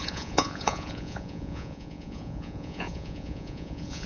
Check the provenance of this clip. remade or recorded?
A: remade